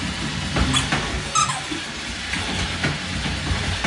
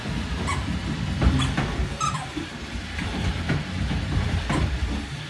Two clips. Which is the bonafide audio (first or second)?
first